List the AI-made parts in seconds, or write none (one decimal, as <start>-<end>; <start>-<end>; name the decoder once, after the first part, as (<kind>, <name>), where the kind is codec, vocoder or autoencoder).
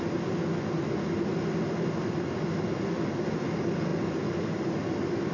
none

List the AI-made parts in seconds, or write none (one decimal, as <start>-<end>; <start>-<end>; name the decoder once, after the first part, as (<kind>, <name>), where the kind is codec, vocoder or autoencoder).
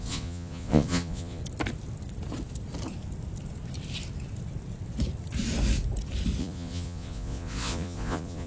0.0-1.4 (vocoder, Vocos); 6.4-8.5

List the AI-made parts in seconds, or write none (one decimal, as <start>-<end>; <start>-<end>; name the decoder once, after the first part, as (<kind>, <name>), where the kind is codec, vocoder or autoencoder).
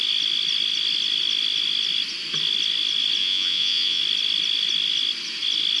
3.2-4.0 (vocoder, Vocos)